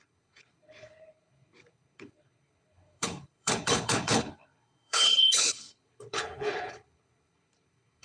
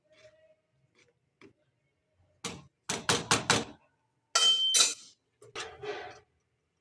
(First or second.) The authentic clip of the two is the second